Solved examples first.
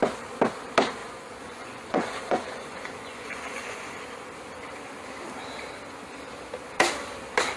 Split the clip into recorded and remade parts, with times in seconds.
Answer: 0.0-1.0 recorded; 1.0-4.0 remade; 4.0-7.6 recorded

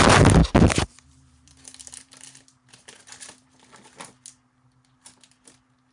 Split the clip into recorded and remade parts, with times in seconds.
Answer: 0.0-5.9 recorded